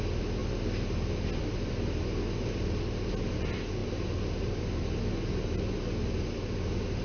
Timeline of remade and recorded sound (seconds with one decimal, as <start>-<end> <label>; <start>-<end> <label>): 0.0-7.0 recorded